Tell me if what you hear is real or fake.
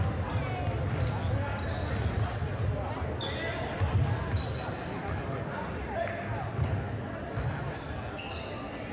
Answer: real